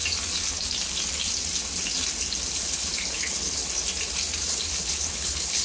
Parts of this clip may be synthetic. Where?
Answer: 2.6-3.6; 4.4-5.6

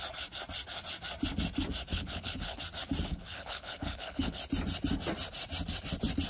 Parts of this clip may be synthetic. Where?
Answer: 1.9-2.6; 3.1-4.4

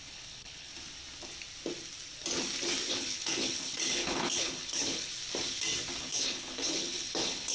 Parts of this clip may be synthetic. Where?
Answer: 0.0-0.7; 2.9-5.1; 6.0-7.5

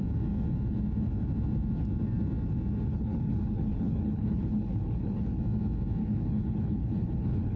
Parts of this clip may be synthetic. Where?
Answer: 2.9-5.4; 6.0-7.6

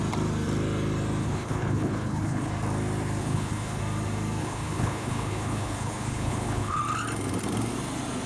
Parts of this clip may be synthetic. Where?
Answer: 1.2-2.5; 3.2-3.8; 4.4-6.8

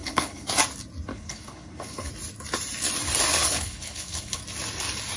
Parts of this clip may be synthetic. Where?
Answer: 0.0-0.5; 1.1-2.1; 3.3-4.4

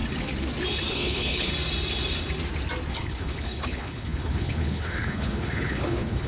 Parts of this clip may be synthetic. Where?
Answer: 0.9-1.5; 2.9-6.3

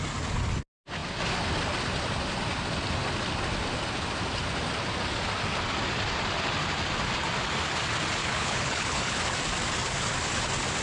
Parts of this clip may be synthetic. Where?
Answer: 8.2-9.2